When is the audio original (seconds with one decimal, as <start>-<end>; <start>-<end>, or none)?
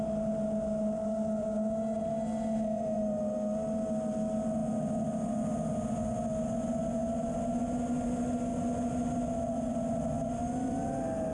0.0-11.3